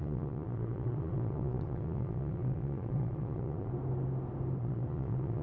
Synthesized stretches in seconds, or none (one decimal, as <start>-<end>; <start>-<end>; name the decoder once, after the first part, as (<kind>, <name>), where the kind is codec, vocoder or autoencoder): 0.0-3.7 (vocoder, Vocos); 4.6-5.4

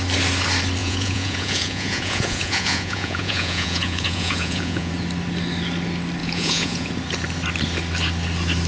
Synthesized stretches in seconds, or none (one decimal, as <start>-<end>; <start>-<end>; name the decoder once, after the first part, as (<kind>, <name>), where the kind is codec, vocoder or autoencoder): 0.8-4.9 (vocoder, Vocos); 6.2-6.9

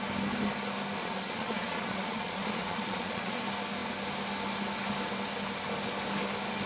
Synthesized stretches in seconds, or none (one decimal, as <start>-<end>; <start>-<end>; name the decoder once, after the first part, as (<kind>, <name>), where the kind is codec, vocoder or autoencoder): 1.0-3.4 (vocoder, Vocos)

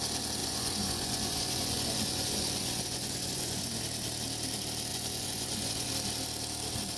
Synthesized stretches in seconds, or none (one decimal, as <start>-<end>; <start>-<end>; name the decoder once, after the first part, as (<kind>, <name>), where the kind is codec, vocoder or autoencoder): 0.4-3.8 (vocoder, Vocos); 4.9-5.9